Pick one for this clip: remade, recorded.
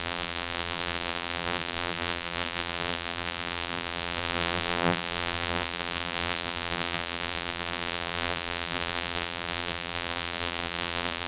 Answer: remade